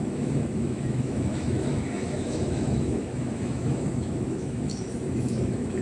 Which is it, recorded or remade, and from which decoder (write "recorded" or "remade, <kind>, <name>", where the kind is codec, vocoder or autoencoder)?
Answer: remade, autoencoder, DAC-VAE